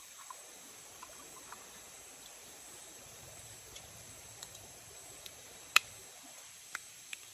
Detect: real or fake fake